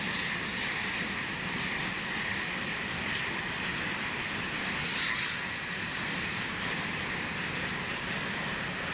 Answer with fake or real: real